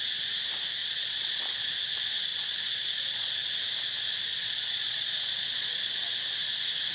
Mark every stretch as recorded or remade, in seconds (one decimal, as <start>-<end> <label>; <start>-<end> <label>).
0.0-0.8 recorded; 0.8-1.4 remade; 1.4-2.3 recorded; 2.3-3.3 remade; 3.3-4.4 recorded; 4.4-5.9 remade; 5.9-6.9 recorded